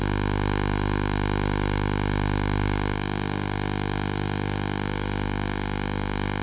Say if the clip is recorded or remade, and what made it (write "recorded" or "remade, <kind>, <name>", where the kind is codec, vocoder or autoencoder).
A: remade, codec, DAC